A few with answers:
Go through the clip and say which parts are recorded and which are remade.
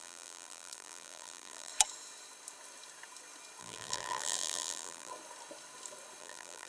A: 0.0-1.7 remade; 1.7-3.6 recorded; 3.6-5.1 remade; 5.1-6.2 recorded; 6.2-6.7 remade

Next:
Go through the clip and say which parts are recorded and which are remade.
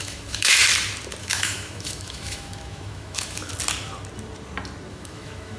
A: 0.0-0.6 remade; 0.6-1.2 recorded; 1.2-3.5 remade; 3.5-4.9 recorded; 4.9-5.6 remade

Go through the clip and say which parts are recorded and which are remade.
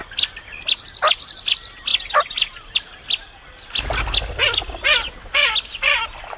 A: 0.0-6.4 recorded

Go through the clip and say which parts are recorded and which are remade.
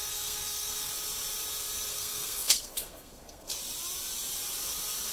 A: 0.0-0.9 remade; 0.9-1.9 recorded; 1.9-3.5 remade; 3.5-5.1 recorded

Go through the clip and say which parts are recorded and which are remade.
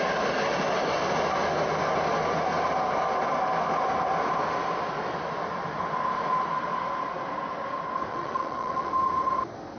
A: 0.0-8.1 recorded; 8.1-8.9 remade; 8.9-9.8 recorded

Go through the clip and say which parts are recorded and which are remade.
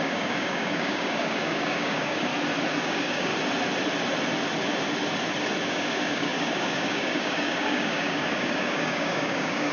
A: 0.0-2.3 remade; 2.3-2.8 recorded; 2.8-3.3 remade; 3.3-5.6 recorded; 5.6-9.7 remade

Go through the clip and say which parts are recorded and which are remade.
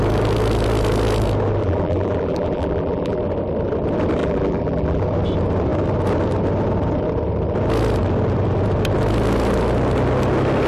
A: 0.0-1.6 recorded; 1.6-3.2 remade; 3.2-4.2 recorded; 4.2-5.0 remade; 5.0-10.7 recorded